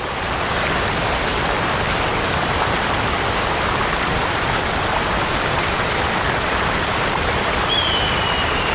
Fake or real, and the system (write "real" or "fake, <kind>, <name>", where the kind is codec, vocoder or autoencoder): fake, vocoder, BigVGAN v2